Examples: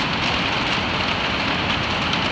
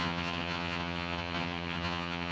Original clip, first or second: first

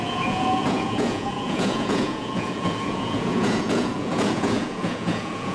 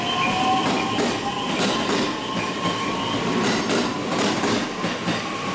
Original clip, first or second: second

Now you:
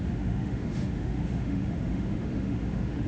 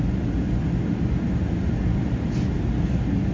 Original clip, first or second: second